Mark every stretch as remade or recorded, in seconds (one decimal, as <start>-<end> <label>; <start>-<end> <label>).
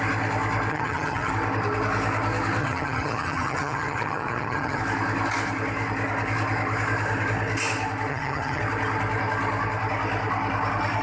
0.0-0.7 recorded; 0.7-1.3 remade; 1.3-2.6 recorded; 2.6-4.8 remade; 4.8-8.1 recorded; 8.1-8.6 remade; 8.6-11.0 recorded